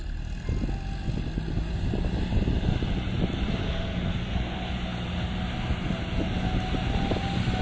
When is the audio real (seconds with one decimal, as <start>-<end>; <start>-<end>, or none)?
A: 0.0-3.6; 4.7-7.6